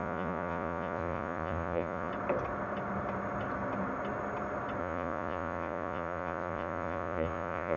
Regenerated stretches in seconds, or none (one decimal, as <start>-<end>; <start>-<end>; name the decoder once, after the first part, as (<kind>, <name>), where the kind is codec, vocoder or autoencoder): 0.0-2.1 (vocoder, Vocos); 4.8-7.8

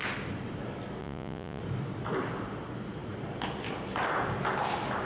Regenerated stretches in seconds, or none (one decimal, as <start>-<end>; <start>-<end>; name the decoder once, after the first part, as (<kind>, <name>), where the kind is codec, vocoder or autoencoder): 1.0-1.6 (vocoder, Vocos)

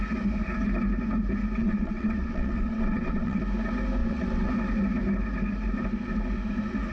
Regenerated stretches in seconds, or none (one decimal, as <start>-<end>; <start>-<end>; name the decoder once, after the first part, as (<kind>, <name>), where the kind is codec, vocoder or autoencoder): 1.6-3.4 (vocoder, WaveNeXt); 4.0-4.5

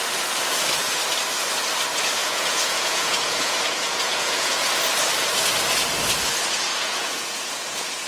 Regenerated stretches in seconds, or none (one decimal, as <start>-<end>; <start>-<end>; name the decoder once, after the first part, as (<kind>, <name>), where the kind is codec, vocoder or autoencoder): 2.2-4.7 (vocoder, Vocos); 6.7-8.1

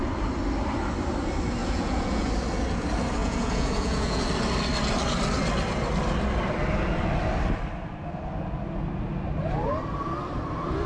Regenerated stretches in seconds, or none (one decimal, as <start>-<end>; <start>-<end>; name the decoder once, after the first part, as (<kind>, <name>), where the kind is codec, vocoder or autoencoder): 1.6-2.3 (vocoder, Vocos); 3.2-4.2